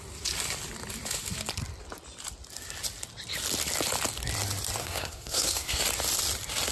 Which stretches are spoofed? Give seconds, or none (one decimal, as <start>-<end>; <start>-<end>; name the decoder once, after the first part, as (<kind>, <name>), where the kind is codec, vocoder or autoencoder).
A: 4.8-5.8 (codec, SNAC)